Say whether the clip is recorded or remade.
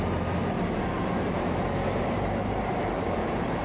remade